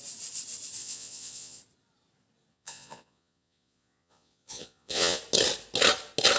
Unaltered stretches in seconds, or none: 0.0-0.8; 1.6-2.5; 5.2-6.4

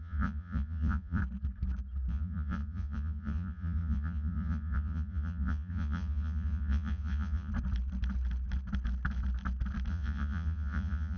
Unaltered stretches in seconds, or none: 1.2-2.1; 7.5-9.9

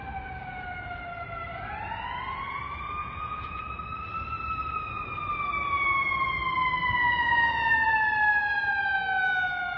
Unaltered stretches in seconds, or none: 0.0-3.0; 3.6-7.0; 7.9-9.8